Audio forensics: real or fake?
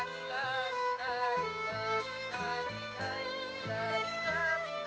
fake